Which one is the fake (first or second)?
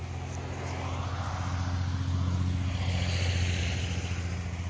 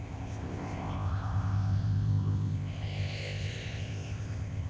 second